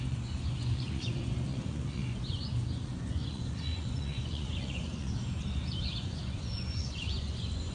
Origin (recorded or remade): remade